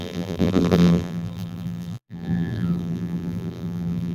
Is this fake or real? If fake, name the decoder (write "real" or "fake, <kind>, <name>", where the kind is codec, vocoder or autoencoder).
fake, vocoder, BigVGAN v2